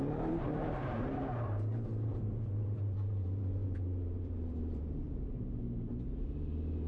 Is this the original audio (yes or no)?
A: no